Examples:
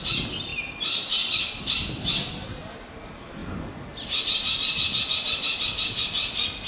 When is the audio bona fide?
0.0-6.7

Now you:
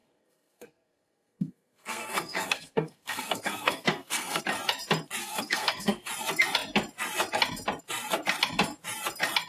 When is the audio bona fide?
4.4-5.2; 6.1-9.5

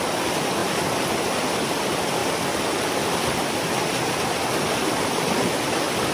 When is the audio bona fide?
0.0-0.6; 1.1-2.2

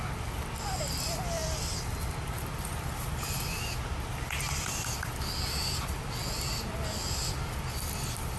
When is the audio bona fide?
0.0-8.4

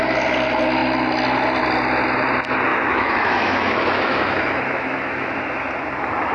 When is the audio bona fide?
0.0-2.7; 5.4-6.3

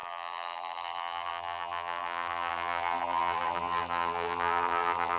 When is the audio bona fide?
none

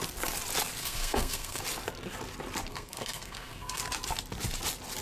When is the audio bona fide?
0.0-0.8; 1.6-2.7; 3.8-5.0